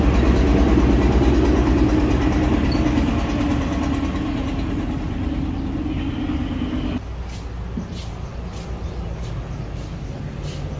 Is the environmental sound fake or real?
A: real